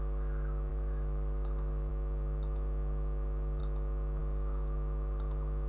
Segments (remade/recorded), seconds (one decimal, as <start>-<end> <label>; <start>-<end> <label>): 0.0-0.7 recorded; 0.7-1.9 remade; 1.9-5.7 recorded

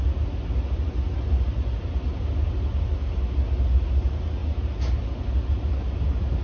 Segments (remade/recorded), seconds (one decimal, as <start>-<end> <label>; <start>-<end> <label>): 0.0-6.4 recorded

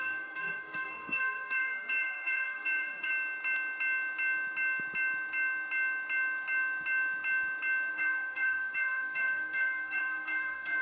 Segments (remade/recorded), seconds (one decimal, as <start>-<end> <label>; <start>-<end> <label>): 0.0-3.1 remade; 3.1-7.9 recorded; 7.9-10.8 remade